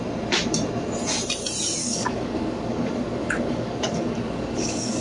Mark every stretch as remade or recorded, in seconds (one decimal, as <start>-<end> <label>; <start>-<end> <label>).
0.0-1.8 recorded; 1.8-5.0 remade

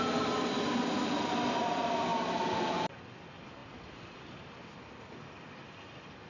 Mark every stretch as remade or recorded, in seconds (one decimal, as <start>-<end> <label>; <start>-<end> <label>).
0.0-3.6 recorded; 3.6-5.1 remade; 5.1-6.3 recorded

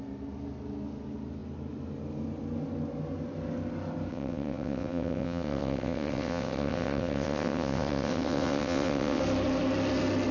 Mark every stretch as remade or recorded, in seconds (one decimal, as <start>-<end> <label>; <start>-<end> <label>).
0.0-4.1 recorded; 4.1-9.2 remade; 9.2-10.3 recorded

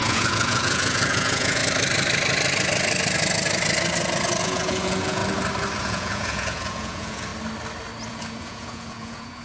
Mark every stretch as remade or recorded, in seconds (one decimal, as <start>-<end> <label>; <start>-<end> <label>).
0.0-1.6 remade; 1.6-4.4 recorded; 4.4-5.2 remade; 5.2-5.8 recorded; 5.8-7.3 remade; 7.3-8.1 recorded; 8.1-9.4 remade